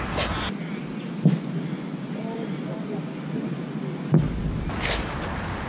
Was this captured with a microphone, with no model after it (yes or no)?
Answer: yes